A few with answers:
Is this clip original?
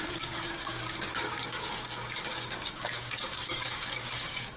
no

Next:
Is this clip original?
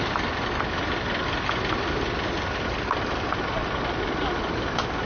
yes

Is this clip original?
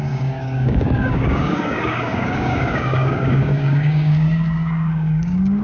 no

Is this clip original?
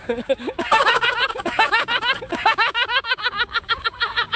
no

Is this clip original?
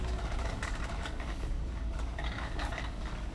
no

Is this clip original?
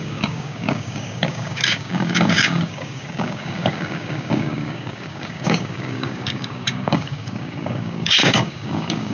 no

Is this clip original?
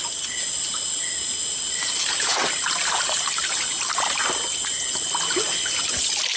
yes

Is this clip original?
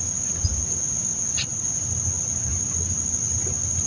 yes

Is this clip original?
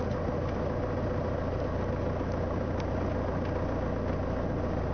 yes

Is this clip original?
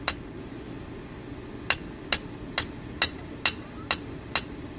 yes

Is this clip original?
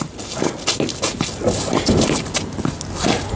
yes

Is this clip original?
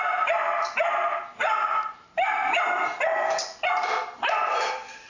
yes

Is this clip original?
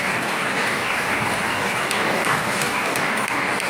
no